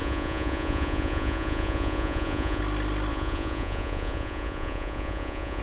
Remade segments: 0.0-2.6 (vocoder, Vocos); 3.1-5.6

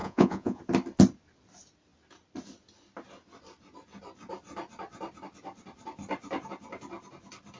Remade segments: 0.0-0.6 (vocoder, Vocos)

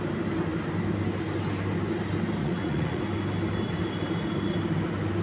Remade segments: 2.4-3.0 (vocoder, Vocos)

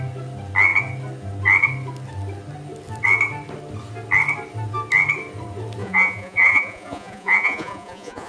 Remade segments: 5.8-8.3 (vocoder, Vocos)

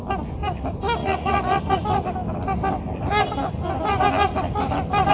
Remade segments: 1.0-1.6 (vocoder, Vocos)